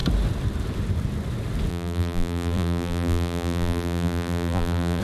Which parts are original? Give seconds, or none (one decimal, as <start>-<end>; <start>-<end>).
0.0-1.7